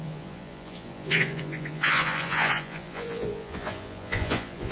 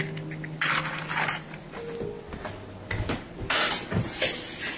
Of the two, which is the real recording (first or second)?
second